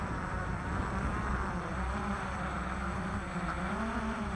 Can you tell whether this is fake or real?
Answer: fake